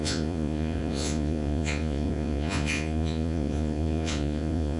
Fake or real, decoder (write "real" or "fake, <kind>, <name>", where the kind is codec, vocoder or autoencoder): fake, vocoder, Vocos